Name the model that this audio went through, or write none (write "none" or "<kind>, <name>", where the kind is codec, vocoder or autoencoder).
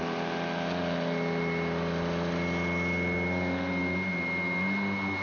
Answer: none